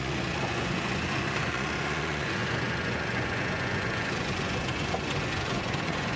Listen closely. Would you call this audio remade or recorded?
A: remade